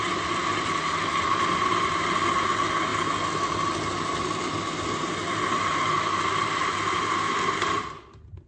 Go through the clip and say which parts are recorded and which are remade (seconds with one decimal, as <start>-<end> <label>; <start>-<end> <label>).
0.0-8.5 recorded